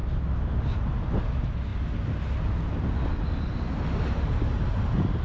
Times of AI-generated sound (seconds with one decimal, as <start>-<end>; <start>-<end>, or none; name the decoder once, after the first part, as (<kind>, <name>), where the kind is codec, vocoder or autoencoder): none